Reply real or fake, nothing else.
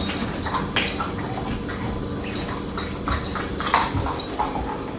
real